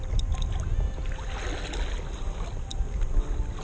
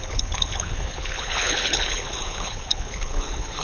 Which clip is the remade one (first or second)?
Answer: second